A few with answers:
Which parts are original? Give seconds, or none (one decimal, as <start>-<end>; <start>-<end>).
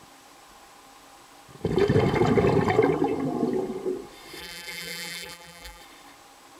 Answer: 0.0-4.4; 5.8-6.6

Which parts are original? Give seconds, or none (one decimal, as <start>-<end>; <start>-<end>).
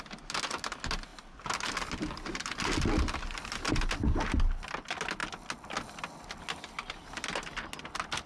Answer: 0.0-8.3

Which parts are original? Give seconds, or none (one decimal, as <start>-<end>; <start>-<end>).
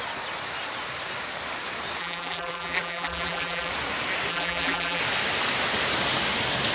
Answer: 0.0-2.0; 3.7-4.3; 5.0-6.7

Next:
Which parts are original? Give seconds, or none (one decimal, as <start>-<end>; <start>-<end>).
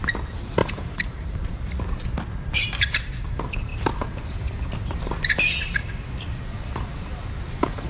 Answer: 0.0-0.6; 1.4-7.9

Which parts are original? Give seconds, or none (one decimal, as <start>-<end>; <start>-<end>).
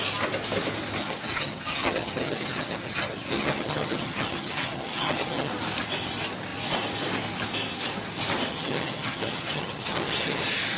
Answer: 0.0-1.0; 5.5-8.5; 10.4-10.8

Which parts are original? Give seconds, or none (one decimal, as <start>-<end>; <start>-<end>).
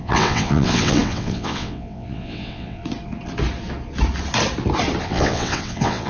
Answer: 2.8-5.0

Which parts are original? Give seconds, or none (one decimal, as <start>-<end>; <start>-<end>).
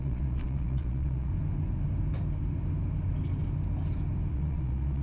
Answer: 1.3-4.3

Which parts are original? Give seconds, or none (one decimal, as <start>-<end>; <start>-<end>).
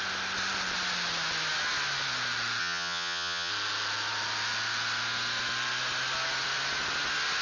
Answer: 0.0-2.6; 3.5-7.4